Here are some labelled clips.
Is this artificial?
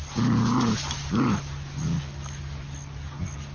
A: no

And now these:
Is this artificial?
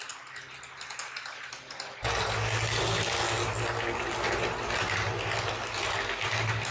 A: no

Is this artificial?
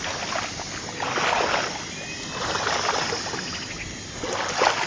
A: no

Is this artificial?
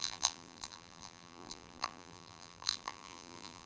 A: yes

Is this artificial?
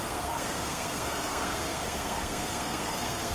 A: yes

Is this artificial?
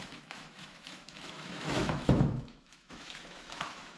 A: yes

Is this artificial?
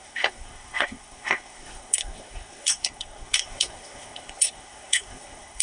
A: yes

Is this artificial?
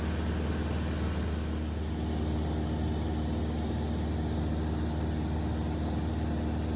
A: no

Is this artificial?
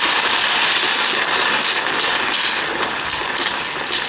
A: no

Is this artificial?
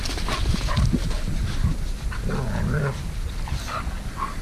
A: no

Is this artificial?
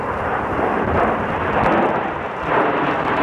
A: no